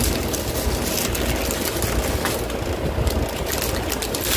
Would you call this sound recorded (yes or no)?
yes